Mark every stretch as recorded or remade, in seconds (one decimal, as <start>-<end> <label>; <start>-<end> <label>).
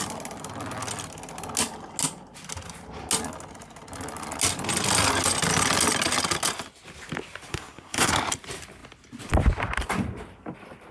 0.0-7.5 recorded; 7.5-8.1 remade; 8.1-10.9 recorded